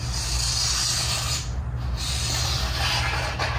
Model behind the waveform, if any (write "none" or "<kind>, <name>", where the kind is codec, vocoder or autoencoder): none